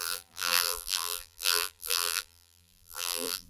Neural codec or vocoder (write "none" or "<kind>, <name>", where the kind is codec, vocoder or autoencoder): vocoder, BigVGAN v2